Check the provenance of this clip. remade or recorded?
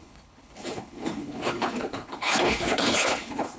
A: remade